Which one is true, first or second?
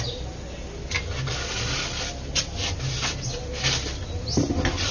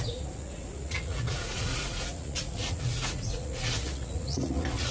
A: first